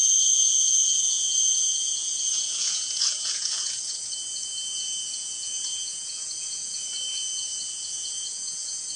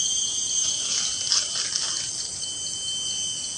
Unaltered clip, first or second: second